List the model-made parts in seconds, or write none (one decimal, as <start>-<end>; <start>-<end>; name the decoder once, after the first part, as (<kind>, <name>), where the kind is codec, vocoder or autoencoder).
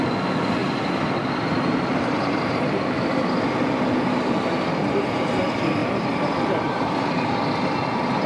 0.6-2.6 (vocoder, BigVGAN v2); 5.8-6.9